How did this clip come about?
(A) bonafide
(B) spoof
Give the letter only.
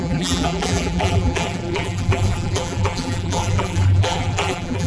B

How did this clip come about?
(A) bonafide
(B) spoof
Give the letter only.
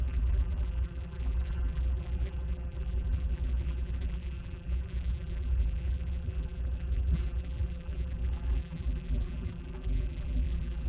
B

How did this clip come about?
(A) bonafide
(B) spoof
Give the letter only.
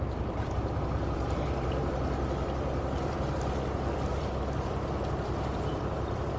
B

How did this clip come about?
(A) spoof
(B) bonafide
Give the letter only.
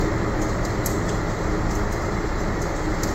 B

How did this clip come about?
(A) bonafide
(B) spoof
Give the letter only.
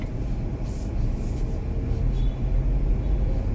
A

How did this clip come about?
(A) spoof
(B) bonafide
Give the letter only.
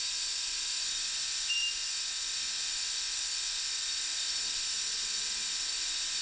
B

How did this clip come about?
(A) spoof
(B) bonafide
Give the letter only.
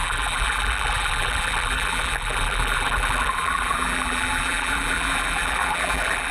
A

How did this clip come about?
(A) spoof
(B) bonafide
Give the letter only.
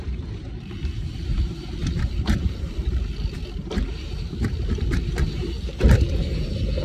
A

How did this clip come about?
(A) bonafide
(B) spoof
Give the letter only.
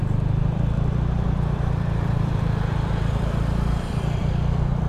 B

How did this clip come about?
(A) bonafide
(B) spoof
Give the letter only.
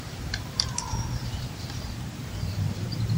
B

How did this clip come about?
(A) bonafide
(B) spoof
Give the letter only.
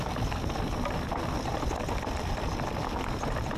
A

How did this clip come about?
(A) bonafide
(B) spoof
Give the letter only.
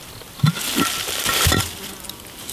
A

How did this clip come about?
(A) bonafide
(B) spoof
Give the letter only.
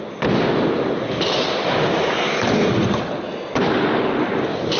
A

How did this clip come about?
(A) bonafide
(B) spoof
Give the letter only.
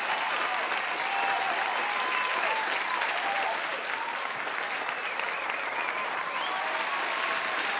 A